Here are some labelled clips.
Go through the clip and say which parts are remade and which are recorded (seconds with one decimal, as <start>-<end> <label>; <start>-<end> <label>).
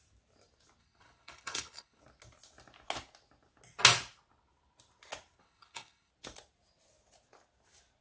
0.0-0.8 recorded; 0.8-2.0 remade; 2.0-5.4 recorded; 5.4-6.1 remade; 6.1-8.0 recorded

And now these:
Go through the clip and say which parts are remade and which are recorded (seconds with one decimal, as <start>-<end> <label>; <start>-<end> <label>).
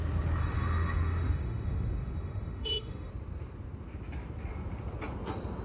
0.0-0.4 recorded; 0.4-3.1 remade; 3.1-5.6 recorded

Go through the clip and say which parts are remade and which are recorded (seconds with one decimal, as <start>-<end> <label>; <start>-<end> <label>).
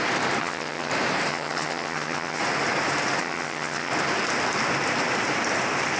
0.0-0.4 recorded; 0.4-0.9 remade; 0.9-1.3 recorded; 1.3-2.4 remade; 2.4-3.2 recorded; 3.2-3.9 remade; 3.9-6.0 recorded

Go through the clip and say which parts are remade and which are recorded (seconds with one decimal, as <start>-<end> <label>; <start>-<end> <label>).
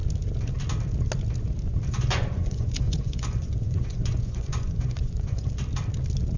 0.0-1.9 recorded; 1.9-5.5 remade; 5.5-6.4 recorded